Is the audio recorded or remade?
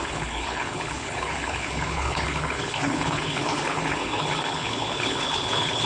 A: remade